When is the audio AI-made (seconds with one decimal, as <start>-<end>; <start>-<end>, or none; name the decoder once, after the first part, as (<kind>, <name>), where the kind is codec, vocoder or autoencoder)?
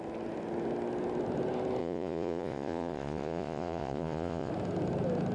1.8-4.5 (vocoder, Vocos)